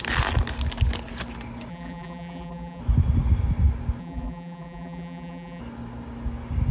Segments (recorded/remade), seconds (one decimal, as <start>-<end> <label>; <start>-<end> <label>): 0.0-1.7 recorded; 1.7-2.8 remade; 2.8-4.0 recorded; 4.0-5.6 remade; 5.6-6.7 recorded